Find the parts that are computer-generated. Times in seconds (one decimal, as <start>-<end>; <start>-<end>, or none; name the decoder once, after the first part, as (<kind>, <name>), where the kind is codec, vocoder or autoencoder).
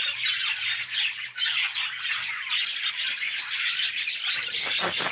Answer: none